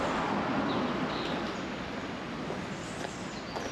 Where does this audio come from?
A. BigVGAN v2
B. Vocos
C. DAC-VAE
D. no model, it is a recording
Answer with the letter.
D